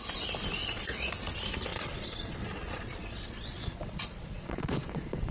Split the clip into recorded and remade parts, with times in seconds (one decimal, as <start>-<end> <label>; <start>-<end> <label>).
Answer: 0.0-0.6 recorded; 0.6-1.1 remade; 1.1-1.7 recorded; 1.7-5.3 remade

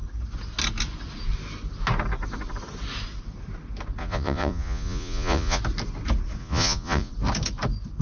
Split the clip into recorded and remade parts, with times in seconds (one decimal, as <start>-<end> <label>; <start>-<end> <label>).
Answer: 0.0-4.0 recorded; 4.0-5.6 remade; 5.6-6.4 recorded; 6.4-7.1 remade; 7.1-8.0 recorded

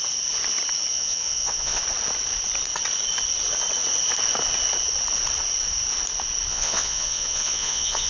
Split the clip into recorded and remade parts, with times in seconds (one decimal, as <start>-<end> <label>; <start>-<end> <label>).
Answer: 0.0-0.9 recorded; 0.9-1.8 remade; 1.8-6.5 recorded; 6.5-8.1 remade

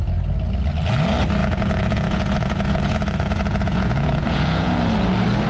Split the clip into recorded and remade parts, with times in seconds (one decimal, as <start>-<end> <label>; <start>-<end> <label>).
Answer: 0.0-1.4 recorded; 1.4-4.7 remade; 4.7-5.5 recorded